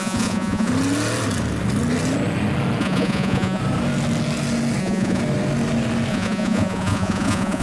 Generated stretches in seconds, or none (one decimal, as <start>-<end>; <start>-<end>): 0.0-0.7; 2.8-3.6; 4.8-5.2; 6.1-7.6